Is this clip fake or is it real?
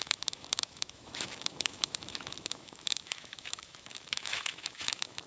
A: fake